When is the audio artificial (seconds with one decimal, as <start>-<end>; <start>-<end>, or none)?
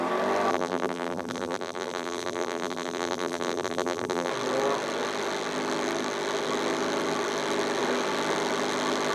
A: 0.5-4.3